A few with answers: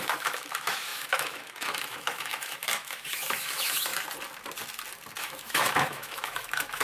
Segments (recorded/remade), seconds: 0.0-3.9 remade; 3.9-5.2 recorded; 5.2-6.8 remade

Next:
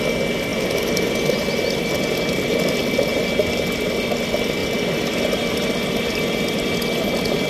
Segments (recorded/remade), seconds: 0.0-0.5 recorded; 0.5-1.1 remade; 1.1-7.5 recorded